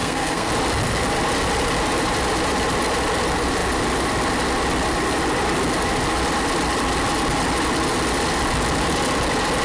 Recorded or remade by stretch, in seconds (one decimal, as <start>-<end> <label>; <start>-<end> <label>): 0.0-0.5 remade; 0.5-9.6 recorded